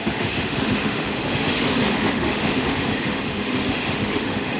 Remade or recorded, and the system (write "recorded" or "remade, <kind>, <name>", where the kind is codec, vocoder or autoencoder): remade, autoencoder, DAC-VAE